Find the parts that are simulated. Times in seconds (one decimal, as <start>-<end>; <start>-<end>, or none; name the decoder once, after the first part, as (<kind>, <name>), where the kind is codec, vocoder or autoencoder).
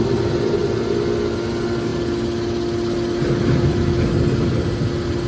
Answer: none